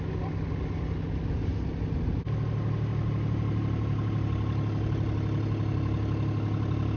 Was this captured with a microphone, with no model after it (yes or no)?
yes